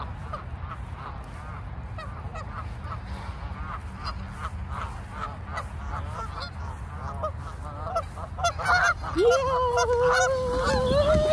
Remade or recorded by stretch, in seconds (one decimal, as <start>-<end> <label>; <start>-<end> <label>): 0.0-11.3 recorded